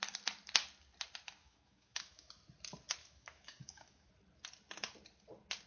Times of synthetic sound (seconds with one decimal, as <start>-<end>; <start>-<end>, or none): 1.4-2.3; 3.0-4.1